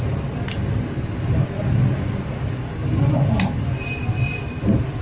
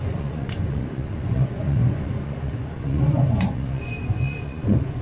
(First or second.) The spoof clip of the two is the second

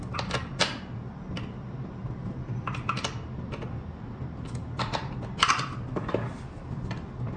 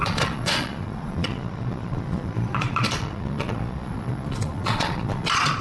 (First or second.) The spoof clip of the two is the second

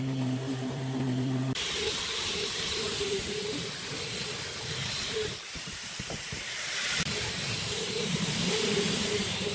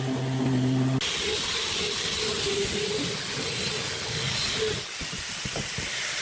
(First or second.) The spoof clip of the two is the first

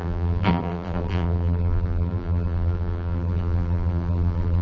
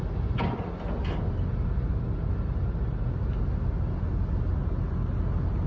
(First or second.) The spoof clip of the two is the first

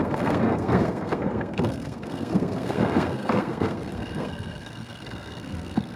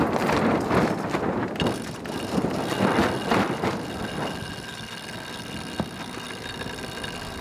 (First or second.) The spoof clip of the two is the first